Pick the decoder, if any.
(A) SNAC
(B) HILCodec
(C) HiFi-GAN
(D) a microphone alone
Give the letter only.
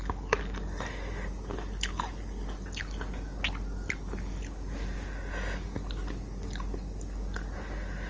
D